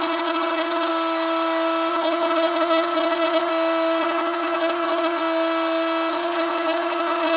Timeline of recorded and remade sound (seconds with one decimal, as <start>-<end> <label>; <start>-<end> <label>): 0.0-0.9 remade; 0.9-1.9 recorded; 1.9-3.5 remade; 3.5-4.0 recorded; 4.0-5.2 remade; 5.2-6.1 recorded; 6.1-7.4 remade